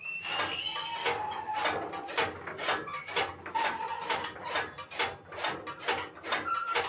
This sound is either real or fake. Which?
real